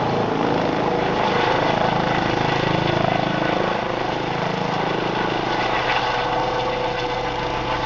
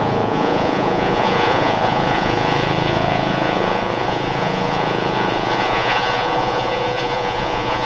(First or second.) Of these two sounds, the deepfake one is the second